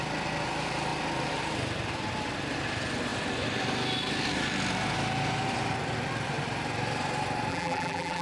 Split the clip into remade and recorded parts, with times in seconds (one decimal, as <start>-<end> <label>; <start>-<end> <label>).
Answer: 0.0-7.5 recorded; 7.5-8.2 remade